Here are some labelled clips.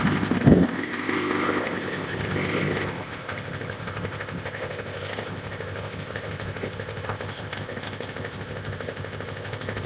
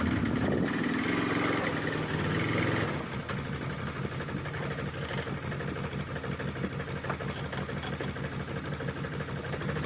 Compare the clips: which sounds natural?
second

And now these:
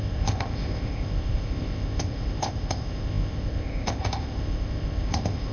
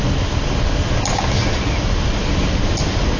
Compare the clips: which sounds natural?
second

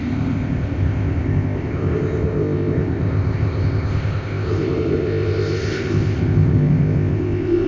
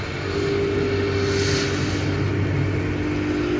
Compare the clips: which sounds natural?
second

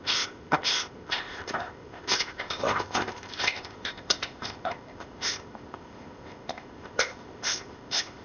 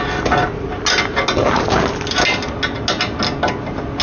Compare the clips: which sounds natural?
second